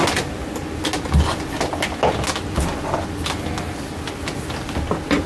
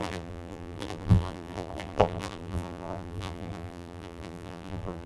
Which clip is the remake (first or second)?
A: second